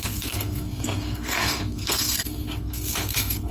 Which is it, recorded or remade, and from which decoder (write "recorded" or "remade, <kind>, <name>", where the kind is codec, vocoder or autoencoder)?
remade, codec, SNAC